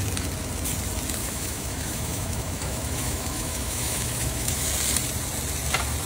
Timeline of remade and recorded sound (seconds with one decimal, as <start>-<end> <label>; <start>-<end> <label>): 0.0-1.2 recorded; 1.2-4.7 remade; 4.7-6.1 recorded